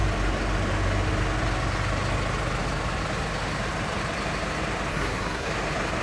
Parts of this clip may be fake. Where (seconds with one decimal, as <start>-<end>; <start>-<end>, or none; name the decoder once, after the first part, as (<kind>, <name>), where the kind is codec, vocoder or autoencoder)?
4.9-5.5 (codec, SNAC)